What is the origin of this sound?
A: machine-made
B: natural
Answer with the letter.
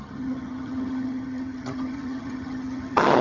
A